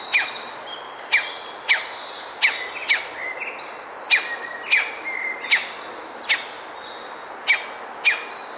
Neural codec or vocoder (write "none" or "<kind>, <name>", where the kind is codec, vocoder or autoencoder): none